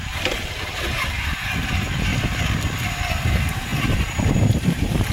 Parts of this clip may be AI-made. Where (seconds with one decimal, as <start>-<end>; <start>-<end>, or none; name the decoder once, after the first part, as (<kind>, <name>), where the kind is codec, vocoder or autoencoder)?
0.0-2.1 (vocoder, BigVGAN v2); 3.2-5.1

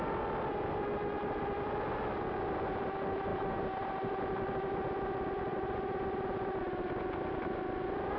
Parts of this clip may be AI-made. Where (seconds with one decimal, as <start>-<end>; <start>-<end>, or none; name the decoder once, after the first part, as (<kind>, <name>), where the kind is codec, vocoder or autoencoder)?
3.3-4.2 (vocoder, BigVGAN v2); 5.5-6.6

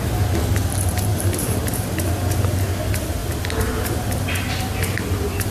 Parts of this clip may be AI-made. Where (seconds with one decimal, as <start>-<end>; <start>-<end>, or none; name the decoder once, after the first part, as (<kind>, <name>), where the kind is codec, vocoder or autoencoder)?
1.1-1.8 (vocoder, BigVGAN v2)

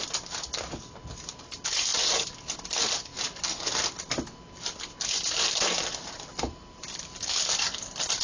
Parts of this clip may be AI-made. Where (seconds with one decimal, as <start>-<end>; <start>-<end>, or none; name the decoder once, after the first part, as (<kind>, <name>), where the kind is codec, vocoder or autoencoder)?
0.0-1.9 (vocoder, BigVGAN v2); 2.6-3.1; 6.4-8.2

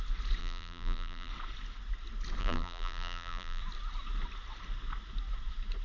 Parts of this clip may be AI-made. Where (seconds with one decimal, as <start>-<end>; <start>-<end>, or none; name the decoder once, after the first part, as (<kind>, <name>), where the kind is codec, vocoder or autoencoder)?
0.4-1.3 (vocoder, BigVGAN v2); 2.4-3.6

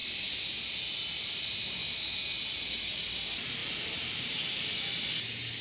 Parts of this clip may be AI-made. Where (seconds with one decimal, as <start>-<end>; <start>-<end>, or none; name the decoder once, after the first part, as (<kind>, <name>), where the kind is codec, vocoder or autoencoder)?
0.0-1.8 (vocoder, BigVGAN v2); 2.5-5.6

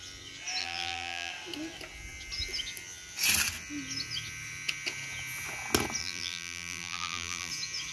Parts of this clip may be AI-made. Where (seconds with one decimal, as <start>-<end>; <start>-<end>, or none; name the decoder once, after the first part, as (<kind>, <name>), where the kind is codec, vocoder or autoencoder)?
0.6-1.3 (vocoder, BigVGAN v2); 6.0-7.5